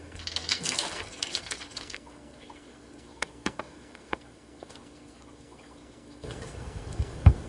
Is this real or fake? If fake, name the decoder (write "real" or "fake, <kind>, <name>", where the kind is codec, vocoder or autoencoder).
fake, codec, SNAC